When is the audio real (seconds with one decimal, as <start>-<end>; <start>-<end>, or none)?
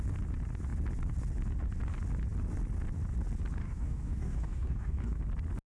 0.0-3.6; 5.2-5.8